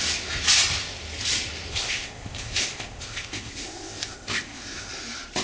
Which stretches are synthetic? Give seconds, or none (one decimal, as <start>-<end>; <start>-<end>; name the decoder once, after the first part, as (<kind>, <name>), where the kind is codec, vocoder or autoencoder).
1.7-4.9 (codec, ZipCodec)